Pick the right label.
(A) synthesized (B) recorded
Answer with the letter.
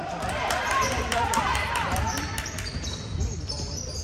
A